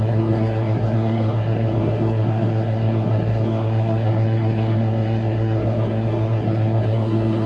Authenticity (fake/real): fake